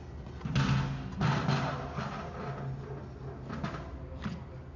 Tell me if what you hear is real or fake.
real